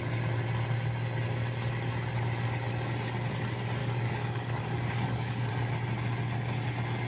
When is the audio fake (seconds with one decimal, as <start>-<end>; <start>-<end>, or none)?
3.8-5.5